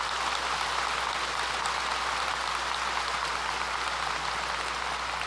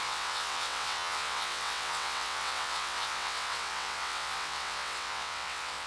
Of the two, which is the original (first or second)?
first